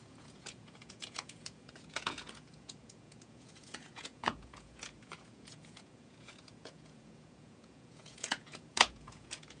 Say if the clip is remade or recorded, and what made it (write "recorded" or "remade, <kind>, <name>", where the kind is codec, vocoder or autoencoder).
remade, vocoder, Vocos